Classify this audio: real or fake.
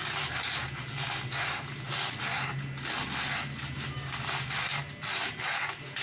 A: real